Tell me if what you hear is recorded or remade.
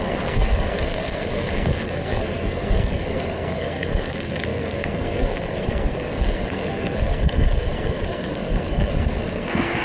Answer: remade